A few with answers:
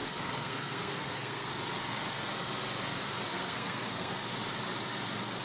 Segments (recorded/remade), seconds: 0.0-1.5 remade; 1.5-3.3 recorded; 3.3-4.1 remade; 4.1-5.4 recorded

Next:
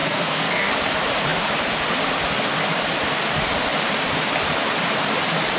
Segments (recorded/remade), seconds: 0.0-0.7 remade; 0.7-5.6 recorded

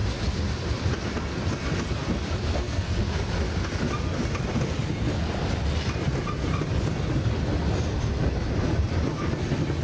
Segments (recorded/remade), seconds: 0.0-2.5 recorded; 2.5-3.0 remade; 3.0-9.8 recorded

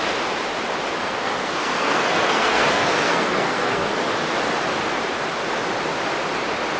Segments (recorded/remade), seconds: 0.0-1.0 recorded; 1.0-3.9 remade; 3.9-6.8 recorded

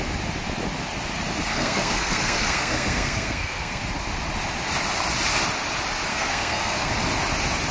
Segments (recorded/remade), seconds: 0.0-1.5 recorded; 1.5-3.8 remade; 3.8-6.1 recorded; 6.1-6.9 remade; 6.9-7.7 recorded

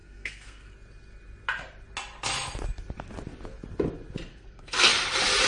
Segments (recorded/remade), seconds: 0.0-0.7 remade; 0.7-4.3 recorded; 4.3-4.9 remade; 4.9-5.5 recorded

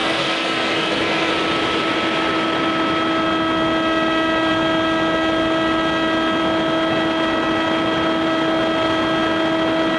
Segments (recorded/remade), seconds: 0.0-1.3 remade; 1.3-10.0 recorded

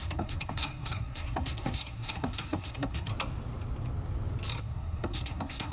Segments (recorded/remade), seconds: 0.0-3.1 remade; 3.1-4.6 recorded; 4.6-5.7 remade